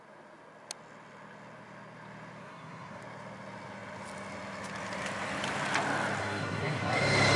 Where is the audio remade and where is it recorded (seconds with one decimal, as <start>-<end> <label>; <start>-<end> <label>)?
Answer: 0.0-2.4 recorded; 2.4-3.0 remade; 3.0-6.2 recorded; 6.2-7.0 remade; 7.0-7.4 recorded